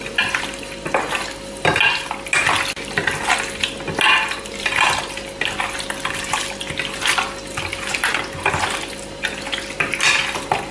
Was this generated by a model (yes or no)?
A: no